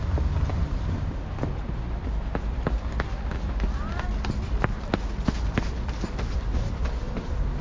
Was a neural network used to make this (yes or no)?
no